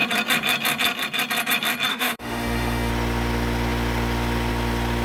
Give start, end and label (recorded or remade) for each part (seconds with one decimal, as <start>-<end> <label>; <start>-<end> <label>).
0.0-1.9 recorded; 1.9-2.9 remade; 2.9-5.0 recorded